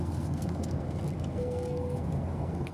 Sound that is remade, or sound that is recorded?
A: remade